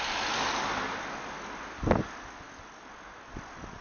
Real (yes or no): yes